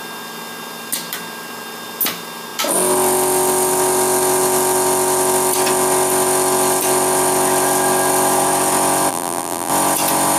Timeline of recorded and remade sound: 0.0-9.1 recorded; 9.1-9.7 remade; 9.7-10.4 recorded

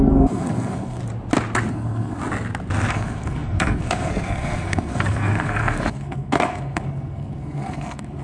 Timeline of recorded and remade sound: 0.0-1.0 remade; 1.0-1.7 recorded; 1.7-2.2 remade; 2.2-2.9 recorded; 2.9-8.2 remade

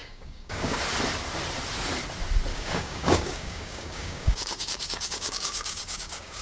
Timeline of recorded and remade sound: 0.0-0.8 remade; 0.8-2.5 recorded; 2.5-6.4 remade

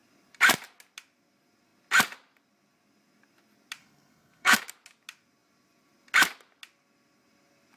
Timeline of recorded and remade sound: 0.0-3.8 recorded; 3.8-4.6 remade; 4.6-7.8 recorded

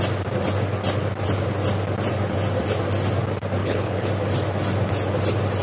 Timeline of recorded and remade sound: 0.0-3.6 recorded; 3.6-4.1 remade; 4.1-5.6 recorded

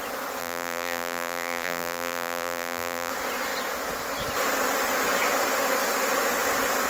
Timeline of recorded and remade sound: 0.0-0.4 recorded; 0.4-3.1 remade; 3.1-6.9 recorded

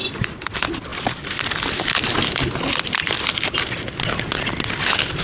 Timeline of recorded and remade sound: 0.0-5.2 recorded